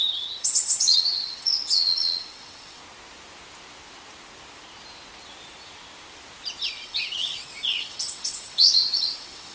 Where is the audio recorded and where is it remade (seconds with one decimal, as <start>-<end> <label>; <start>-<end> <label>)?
0.0-2.8 remade; 2.8-6.6 recorded; 6.6-9.5 remade